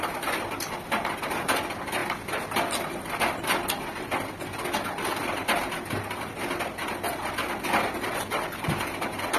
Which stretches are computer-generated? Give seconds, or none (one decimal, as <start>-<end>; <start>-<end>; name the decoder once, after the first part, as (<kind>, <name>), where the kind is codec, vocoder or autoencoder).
none